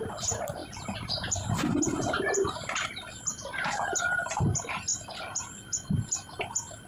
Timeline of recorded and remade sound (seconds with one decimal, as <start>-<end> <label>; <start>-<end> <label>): 0.0-6.9 remade